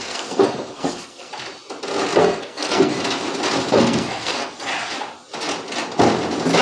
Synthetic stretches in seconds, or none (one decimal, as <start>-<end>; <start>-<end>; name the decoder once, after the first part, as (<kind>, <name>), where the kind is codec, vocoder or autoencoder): 0.0-1.3 (codec, SNAC); 2.2-2.9; 3.7-4.7